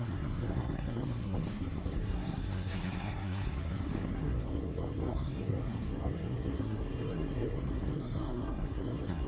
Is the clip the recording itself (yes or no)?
no